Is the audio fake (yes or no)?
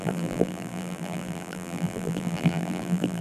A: yes